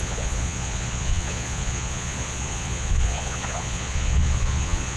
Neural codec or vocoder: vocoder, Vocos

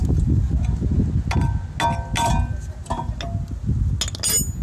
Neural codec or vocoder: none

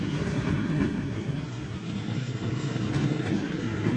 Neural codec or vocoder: codec, SNAC